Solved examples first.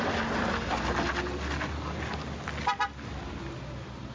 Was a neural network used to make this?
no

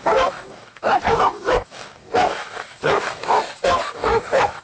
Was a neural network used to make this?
yes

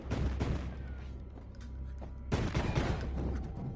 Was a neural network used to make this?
no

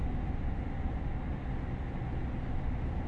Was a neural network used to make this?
no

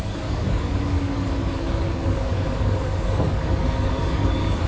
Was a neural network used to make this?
yes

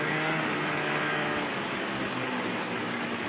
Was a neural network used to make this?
yes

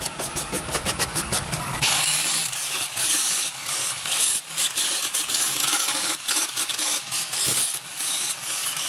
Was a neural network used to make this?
yes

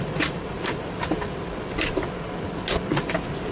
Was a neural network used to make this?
no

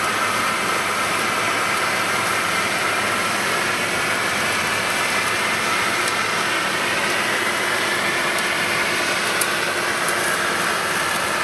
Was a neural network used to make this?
no